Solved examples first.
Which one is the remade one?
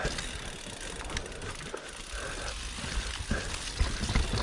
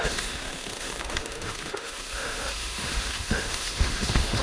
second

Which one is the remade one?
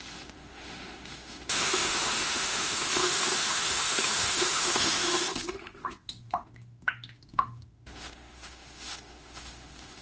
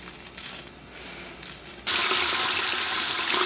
first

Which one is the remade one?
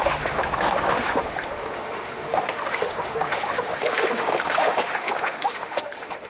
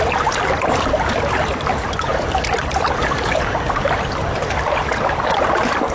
first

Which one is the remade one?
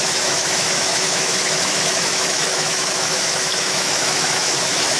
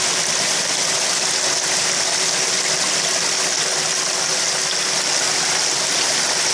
first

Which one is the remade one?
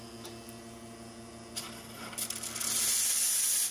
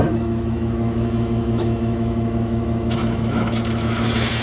second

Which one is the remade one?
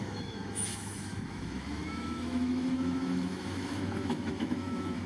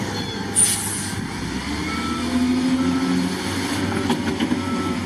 first